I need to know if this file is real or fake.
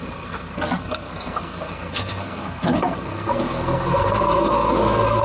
fake